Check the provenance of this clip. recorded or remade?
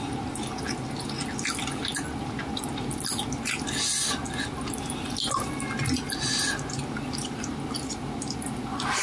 recorded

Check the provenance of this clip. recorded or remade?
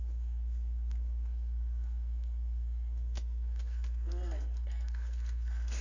remade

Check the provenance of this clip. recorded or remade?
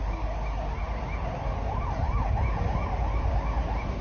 recorded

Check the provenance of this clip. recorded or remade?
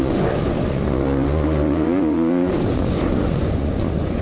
remade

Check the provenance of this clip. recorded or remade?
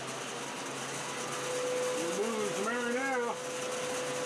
recorded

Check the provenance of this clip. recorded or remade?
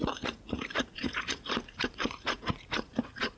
remade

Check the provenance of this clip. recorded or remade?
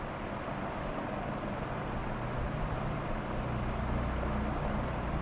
recorded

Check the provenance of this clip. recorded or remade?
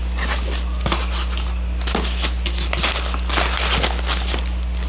recorded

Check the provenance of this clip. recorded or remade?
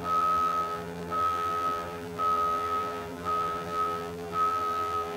remade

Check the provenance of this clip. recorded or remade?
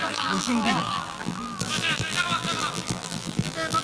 remade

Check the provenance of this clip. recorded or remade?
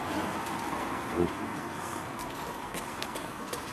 remade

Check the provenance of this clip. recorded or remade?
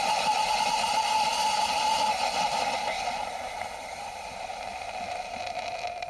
recorded